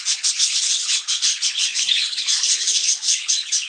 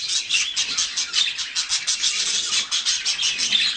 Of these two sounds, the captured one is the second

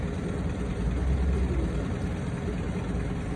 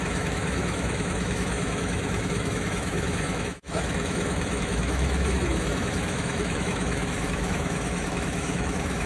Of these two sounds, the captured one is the first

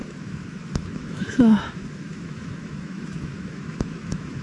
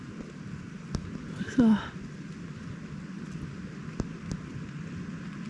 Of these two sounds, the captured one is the second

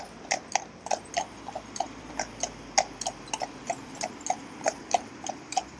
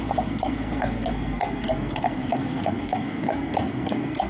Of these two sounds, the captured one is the first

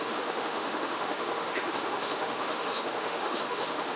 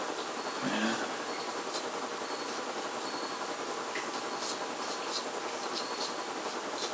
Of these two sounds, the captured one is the second